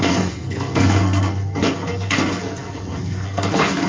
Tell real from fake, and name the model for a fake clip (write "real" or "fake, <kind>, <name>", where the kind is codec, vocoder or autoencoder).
fake, codec, SNAC